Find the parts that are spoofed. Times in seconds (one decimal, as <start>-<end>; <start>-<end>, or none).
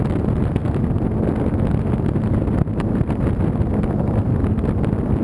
none